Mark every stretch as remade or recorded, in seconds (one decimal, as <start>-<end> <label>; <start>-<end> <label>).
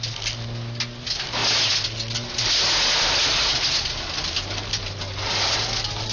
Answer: 0.0-6.1 recorded